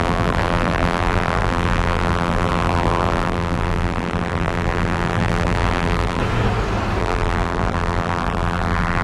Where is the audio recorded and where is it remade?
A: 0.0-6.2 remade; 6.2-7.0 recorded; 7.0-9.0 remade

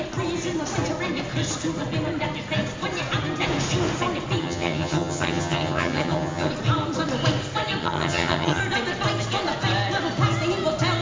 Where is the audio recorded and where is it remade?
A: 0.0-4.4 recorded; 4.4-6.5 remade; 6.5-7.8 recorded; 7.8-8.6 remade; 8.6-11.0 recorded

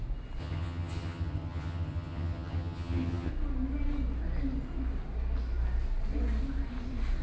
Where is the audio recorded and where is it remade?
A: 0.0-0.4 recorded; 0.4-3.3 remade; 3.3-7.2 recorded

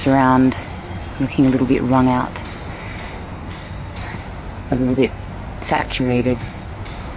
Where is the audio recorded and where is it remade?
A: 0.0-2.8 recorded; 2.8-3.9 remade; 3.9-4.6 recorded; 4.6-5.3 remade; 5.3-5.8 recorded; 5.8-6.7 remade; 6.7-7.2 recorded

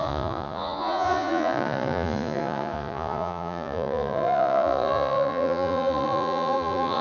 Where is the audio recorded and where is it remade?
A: 0.0-7.0 remade